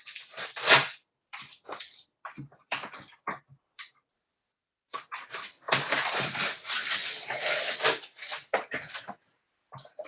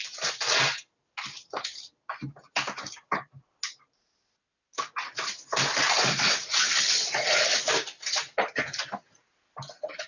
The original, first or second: second